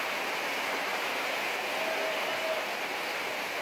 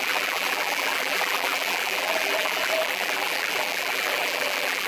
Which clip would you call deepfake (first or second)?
second